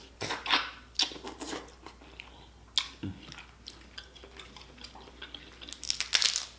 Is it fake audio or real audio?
real